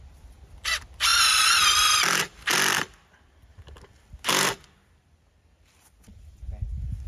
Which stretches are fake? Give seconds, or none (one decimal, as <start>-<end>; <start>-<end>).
none